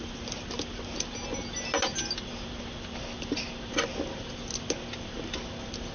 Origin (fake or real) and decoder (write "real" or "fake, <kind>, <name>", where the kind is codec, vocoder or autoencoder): real